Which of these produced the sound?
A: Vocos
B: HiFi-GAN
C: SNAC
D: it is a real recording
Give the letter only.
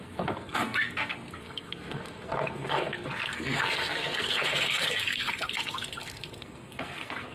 C